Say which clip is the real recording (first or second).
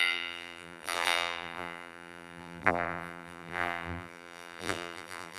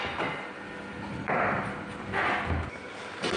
second